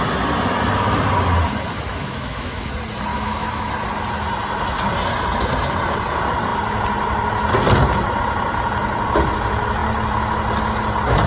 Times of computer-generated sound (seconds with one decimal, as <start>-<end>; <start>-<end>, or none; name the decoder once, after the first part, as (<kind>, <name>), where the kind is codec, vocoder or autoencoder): 1.9-2.7 (autoencoder, DAC-VAE); 3.1-3.7